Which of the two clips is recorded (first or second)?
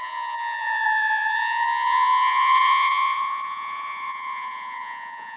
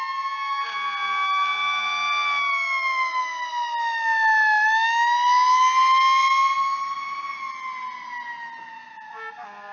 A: second